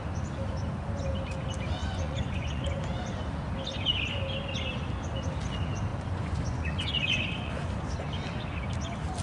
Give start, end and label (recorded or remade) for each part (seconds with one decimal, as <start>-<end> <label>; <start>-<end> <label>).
0.0-1.8 recorded; 1.8-2.7 remade; 2.7-5.9 recorded; 5.9-7.5 remade; 7.5-9.2 recorded